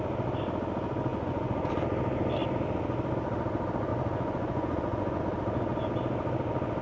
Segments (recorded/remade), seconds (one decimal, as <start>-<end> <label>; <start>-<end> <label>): 0.0-1.1 recorded; 1.1-1.7 remade; 1.7-3.9 recorded; 3.9-5.2 remade; 5.2-6.8 recorded